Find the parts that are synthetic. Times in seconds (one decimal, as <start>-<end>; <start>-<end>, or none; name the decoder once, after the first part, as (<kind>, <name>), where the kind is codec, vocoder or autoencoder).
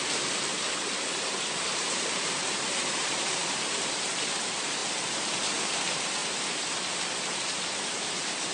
0.0-0.5 (vocoder, BigVGAN v2); 1.1-4.8; 5.7-8.5